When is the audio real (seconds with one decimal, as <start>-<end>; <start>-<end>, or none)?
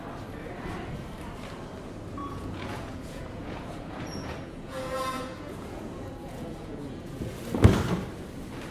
0.0-2.2; 7.4-8.7